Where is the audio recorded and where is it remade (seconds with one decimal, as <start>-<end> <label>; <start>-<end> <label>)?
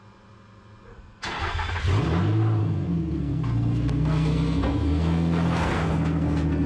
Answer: 0.0-0.9 recorded; 0.9-1.7 remade; 1.7-2.6 recorded; 2.6-6.7 remade